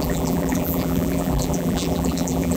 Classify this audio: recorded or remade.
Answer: remade